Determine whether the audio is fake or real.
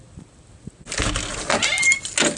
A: real